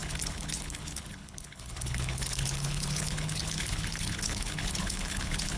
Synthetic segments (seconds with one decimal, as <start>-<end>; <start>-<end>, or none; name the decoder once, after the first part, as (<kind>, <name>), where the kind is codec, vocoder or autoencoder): 0.0-5.6 (codec, HILCodec)